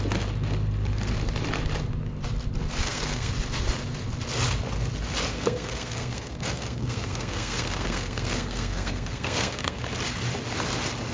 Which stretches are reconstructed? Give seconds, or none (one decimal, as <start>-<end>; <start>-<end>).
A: 2.8-3.3; 5.3-9.8